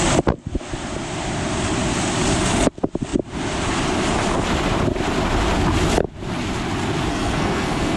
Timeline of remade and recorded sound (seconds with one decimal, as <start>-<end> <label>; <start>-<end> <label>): 0.0-7.1 recorded; 7.1-8.0 remade